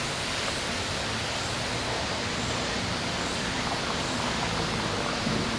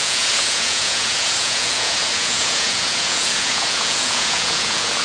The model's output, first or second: second